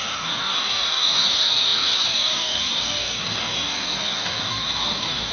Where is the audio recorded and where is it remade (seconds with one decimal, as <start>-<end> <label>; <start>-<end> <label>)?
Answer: 0.0-5.3 remade